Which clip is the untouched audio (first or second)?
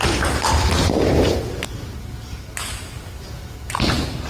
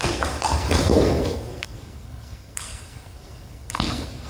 first